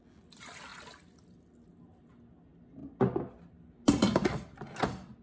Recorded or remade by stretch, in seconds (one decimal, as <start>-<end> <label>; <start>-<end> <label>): 0.0-5.2 recorded